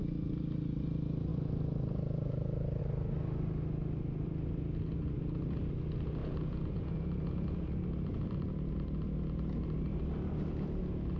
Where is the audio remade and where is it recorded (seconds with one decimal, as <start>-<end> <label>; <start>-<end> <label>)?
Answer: 0.0-6.2 recorded; 6.2-7.7 remade; 7.7-11.2 recorded